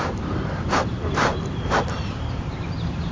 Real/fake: fake